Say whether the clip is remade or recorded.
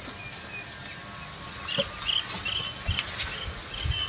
recorded